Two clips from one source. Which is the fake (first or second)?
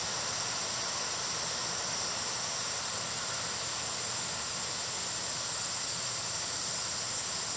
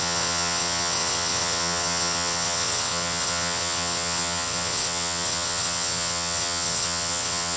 second